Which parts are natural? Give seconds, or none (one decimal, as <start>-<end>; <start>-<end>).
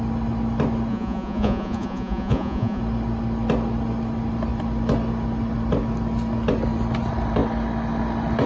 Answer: 0.0-0.9; 2.8-8.5